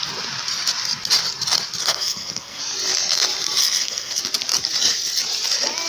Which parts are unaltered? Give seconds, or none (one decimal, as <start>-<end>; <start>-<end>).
0.0-1.8; 2.6-3.6; 4.2-5.9